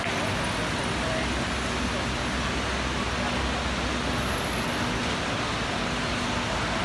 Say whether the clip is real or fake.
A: real